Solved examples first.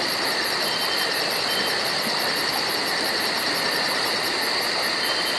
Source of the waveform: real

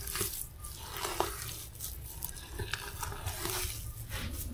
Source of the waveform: real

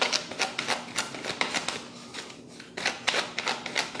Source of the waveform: real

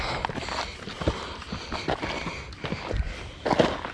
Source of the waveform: real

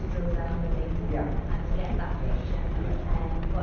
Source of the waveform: real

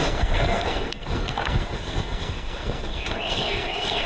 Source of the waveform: fake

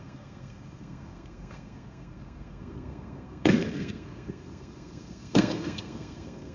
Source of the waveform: fake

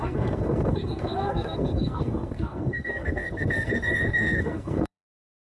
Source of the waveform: fake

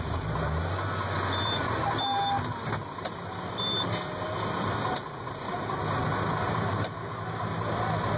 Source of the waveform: real